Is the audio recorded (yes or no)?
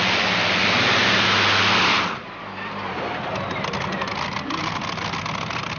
yes